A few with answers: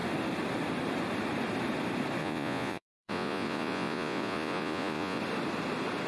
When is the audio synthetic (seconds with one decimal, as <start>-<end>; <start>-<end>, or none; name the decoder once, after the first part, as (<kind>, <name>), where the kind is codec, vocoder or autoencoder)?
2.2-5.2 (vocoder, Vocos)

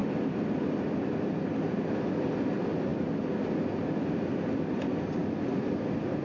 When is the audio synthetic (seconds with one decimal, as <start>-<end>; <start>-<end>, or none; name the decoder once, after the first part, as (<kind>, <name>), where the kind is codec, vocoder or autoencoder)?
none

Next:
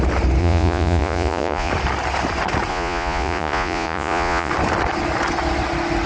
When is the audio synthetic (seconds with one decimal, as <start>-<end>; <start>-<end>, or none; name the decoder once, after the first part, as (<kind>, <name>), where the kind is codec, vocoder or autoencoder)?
0.4-1.7 (vocoder, Vocos); 2.7-4.5